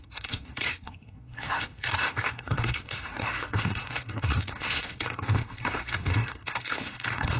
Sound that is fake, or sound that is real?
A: fake